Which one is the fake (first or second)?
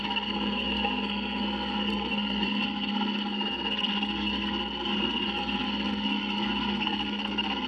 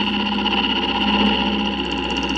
first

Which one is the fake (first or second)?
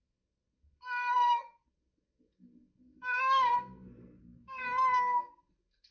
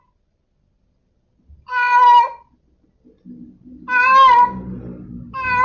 first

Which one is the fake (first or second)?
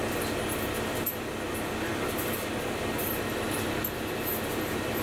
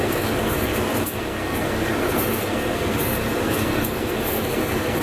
second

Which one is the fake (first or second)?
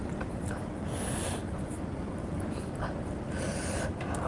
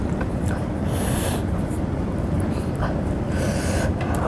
second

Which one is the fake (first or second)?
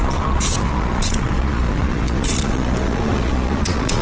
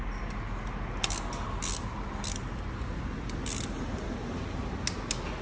first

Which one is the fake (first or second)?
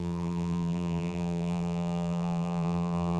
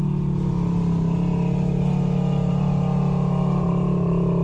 first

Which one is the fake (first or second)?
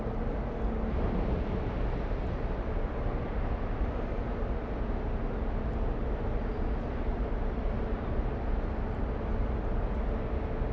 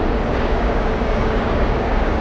second